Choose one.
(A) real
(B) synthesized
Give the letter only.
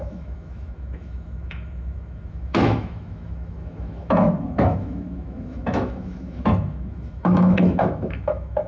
B